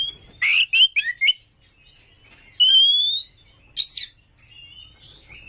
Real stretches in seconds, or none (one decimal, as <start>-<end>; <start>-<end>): 0.0-5.5

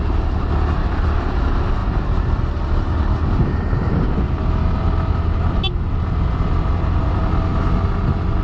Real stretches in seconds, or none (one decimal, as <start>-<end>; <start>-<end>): 0.0-8.4

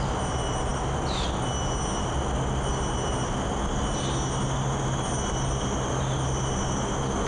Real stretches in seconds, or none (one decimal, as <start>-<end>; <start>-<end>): 0.0-7.3